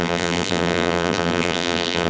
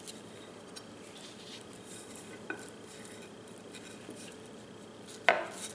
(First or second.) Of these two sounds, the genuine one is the second